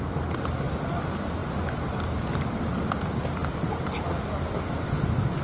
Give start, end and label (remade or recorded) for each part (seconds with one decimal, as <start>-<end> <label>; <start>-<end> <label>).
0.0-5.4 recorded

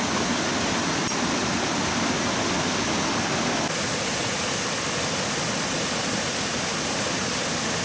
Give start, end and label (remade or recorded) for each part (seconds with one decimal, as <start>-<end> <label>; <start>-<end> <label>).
0.0-7.8 recorded

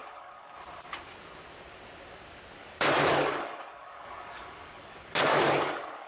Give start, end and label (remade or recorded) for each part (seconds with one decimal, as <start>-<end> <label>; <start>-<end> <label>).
0.0-0.6 remade; 0.6-2.6 recorded; 2.6-6.1 remade

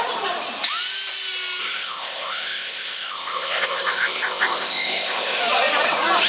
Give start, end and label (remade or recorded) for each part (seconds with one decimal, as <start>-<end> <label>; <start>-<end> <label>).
0.0-1.6 recorded; 1.6-5.4 remade; 5.4-6.3 recorded

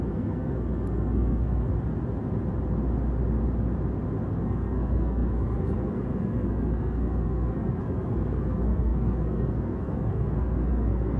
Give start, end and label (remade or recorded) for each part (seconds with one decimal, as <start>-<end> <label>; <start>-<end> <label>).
0.0-1.7 remade; 1.7-4.4 recorded; 4.4-11.2 remade

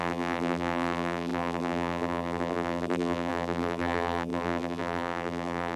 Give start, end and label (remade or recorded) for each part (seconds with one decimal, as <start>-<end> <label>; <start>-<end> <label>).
0.0-5.8 remade

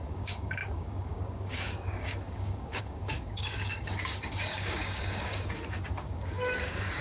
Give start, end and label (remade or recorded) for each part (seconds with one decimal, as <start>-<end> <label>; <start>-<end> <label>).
0.0-7.0 remade

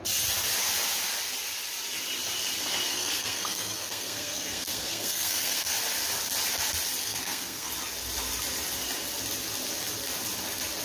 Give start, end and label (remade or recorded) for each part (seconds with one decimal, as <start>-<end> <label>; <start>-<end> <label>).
0.0-2.9 recorded; 2.9-5.8 remade; 5.8-7.0 recorded; 7.0-7.7 remade; 7.7-10.8 recorded